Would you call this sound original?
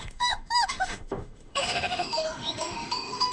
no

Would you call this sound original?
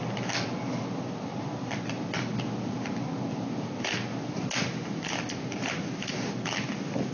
yes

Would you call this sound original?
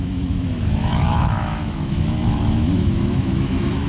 no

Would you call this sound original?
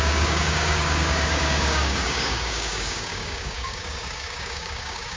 no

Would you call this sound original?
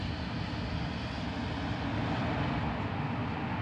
yes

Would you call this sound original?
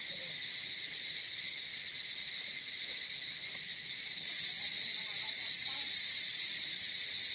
yes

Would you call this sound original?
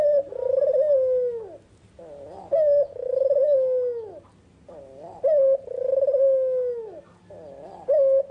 yes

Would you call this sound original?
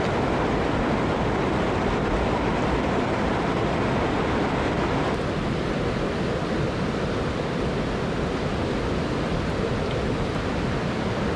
yes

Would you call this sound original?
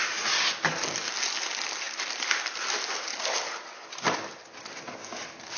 yes